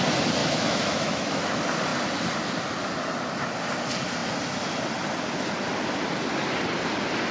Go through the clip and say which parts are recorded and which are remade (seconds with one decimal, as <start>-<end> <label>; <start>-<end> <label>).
0.0-0.4 recorded; 0.4-1.5 remade; 1.5-7.3 recorded